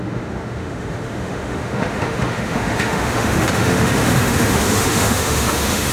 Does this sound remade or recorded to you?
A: remade